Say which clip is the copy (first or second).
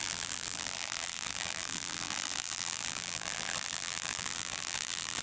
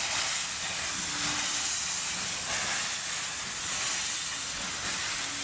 first